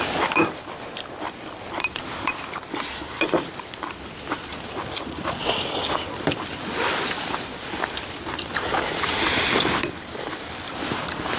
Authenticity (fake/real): fake